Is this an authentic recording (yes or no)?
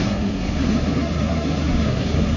no